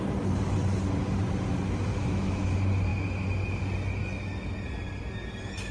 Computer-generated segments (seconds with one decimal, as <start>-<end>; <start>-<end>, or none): 1.9-2.5